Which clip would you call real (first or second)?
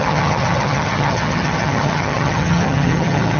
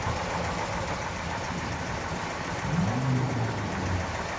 second